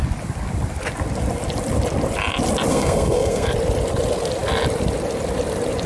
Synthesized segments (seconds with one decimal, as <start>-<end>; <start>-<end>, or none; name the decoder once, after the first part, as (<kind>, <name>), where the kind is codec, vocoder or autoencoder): 2.7-3.5 (codec, SNAC)